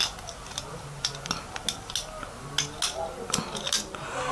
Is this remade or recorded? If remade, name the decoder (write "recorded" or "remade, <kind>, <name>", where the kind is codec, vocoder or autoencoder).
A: recorded